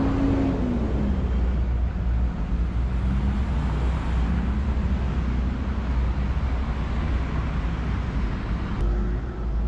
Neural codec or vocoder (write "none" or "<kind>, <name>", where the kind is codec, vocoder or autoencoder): none